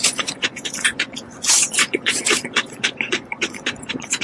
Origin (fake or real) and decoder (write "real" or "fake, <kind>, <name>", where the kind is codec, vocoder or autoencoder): fake, vocoder, Vocos